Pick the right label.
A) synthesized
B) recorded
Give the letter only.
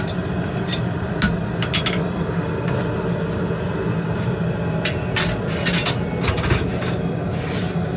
B